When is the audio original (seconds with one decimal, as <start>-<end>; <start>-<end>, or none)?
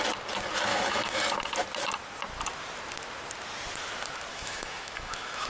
0.0-0.7; 1.2-4.3